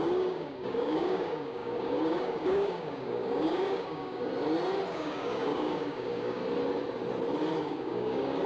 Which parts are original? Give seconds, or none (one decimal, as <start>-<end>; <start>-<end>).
4.3-4.9; 6.4-7.6